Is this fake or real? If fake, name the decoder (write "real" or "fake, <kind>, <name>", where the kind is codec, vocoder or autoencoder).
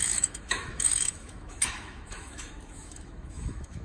fake, autoencoder, DAC-VAE